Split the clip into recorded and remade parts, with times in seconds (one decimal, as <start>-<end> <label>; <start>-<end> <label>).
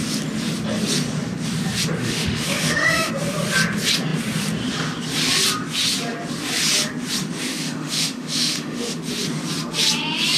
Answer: 0.0-2.0 recorded; 2.0-3.1 remade; 3.1-7.5 recorded; 7.5-9.0 remade; 9.0-10.4 recorded